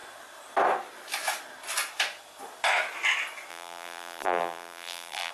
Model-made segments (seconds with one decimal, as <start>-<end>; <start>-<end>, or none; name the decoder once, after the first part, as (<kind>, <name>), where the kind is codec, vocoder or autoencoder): 3.5-5.3 (vocoder, BigVGAN v2)